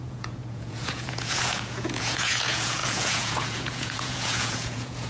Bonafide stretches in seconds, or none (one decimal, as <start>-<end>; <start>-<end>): none